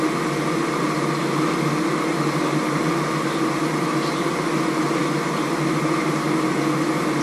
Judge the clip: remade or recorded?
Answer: recorded